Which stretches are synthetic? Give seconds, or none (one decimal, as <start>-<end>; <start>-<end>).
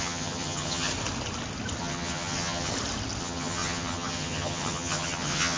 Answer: 0.0-0.9; 1.8-2.7; 3.2-5.6